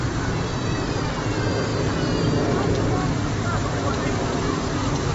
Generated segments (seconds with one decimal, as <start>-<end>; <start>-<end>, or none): 0.0-1.7; 3.7-5.1